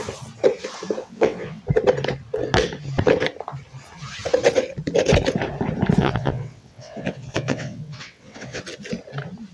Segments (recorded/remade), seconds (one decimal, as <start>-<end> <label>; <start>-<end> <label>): 0.0-1.0 recorded; 1.0-1.6 remade; 1.6-6.0 recorded; 6.0-8.6 remade; 8.6-9.5 recorded